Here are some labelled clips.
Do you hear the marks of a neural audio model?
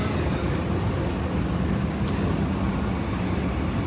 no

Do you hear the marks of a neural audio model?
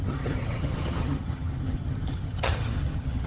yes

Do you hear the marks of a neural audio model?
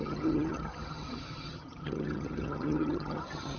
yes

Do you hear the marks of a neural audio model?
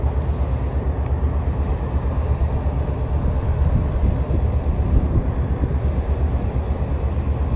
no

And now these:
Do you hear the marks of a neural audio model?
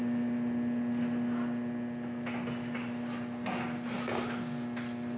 no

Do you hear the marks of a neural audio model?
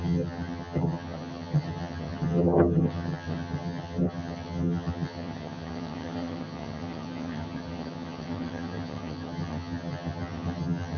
yes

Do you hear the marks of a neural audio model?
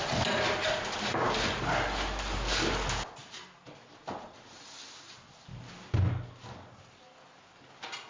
no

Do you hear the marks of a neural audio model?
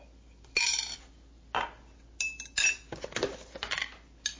no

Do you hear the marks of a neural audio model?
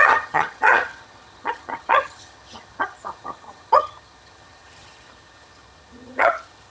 yes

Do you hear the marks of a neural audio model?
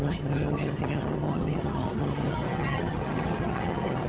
yes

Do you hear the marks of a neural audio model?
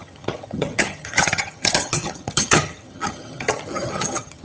yes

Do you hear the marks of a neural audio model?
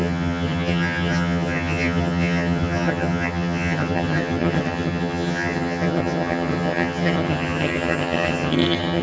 yes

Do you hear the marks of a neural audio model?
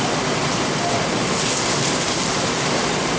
no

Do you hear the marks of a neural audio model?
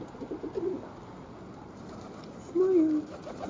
no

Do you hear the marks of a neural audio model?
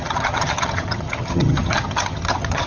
yes